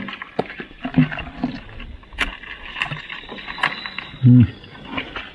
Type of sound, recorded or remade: recorded